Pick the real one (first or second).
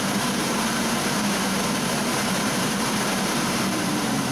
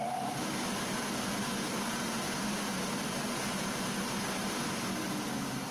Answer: second